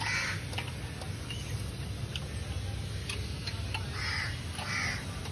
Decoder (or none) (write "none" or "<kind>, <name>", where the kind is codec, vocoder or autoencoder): none